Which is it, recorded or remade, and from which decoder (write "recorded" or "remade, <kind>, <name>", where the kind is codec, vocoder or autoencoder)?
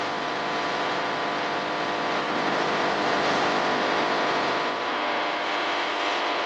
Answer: recorded